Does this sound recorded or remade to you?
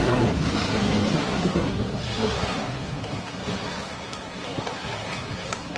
remade